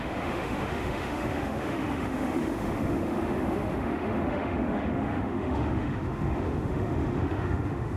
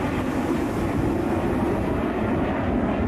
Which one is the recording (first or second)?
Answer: second